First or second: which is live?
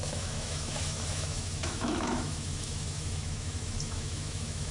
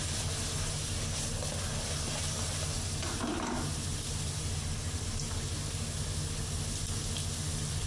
second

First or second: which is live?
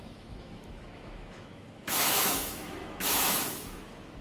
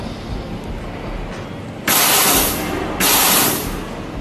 second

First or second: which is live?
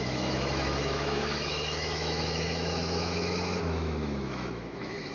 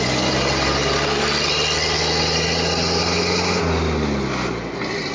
second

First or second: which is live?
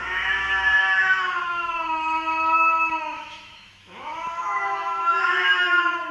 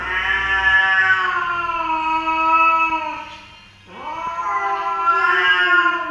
second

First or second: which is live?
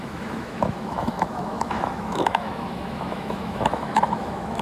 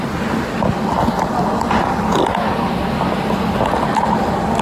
second